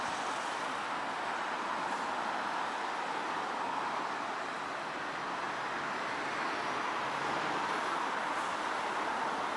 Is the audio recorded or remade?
recorded